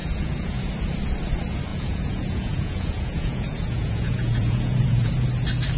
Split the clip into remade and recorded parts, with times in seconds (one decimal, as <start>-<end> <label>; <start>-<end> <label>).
0.0-0.7 remade; 0.7-1.7 recorded; 1.7-5.1 remade; 5.1-5.8 recorded